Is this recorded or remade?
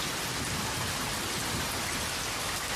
recorded